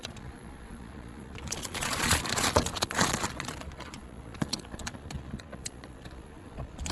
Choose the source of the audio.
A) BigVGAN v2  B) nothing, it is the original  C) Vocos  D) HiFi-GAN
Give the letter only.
C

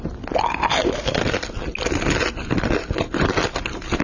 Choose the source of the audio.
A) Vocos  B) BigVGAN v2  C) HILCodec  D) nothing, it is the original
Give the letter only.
D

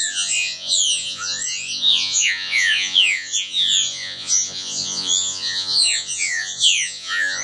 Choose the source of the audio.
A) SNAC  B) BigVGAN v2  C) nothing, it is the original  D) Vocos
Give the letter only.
D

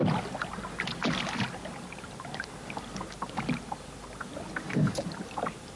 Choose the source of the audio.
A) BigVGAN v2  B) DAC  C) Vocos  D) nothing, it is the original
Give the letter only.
D